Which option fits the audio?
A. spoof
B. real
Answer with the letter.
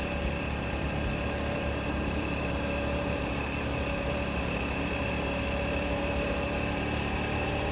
A